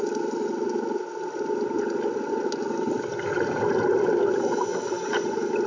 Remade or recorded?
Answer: recorded